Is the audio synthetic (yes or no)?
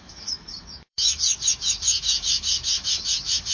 yes